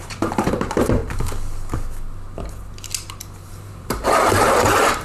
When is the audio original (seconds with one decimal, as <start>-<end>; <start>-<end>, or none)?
1.0-3.5